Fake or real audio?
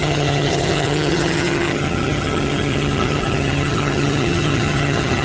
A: fake